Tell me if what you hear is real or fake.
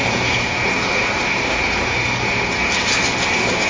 real